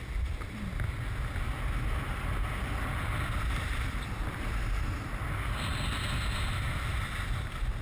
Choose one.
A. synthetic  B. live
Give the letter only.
B